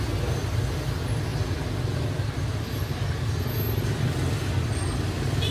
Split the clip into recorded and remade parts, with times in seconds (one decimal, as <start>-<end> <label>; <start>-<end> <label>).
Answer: 0.0-5.5 recorded